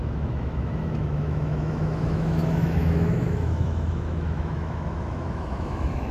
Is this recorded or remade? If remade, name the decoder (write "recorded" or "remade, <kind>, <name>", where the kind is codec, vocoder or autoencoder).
remade, autoencoder, DAC-VAE